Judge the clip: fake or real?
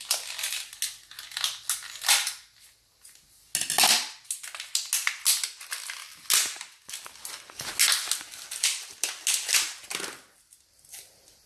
real